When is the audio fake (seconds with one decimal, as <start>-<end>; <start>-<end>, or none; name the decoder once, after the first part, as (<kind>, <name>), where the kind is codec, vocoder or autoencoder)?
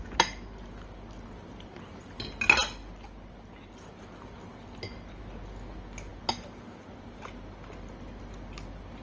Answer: none